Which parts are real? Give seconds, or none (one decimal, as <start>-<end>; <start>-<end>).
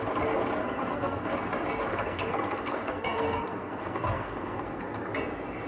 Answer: 0.0-0.6; 1.3-1.9; 5.1-5.7